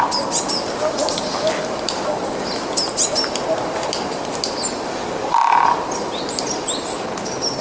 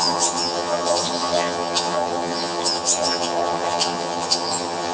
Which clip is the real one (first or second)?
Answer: first